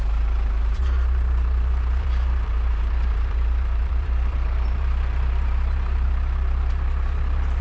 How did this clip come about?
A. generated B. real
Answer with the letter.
A